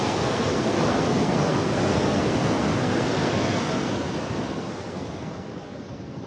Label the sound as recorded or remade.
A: remade